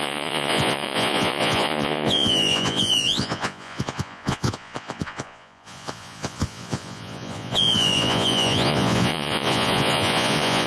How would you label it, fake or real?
fake